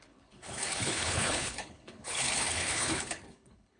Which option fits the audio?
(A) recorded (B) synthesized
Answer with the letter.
B